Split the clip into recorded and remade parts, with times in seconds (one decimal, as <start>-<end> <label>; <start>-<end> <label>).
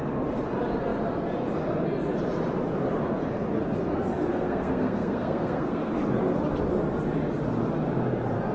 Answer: 0.0-4.3 recorded; 4.3-5.9 remade; 5.9-8.5 recorded